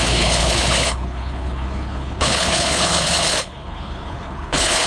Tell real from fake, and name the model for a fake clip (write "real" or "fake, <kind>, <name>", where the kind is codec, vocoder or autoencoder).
fake, codec, HILCodec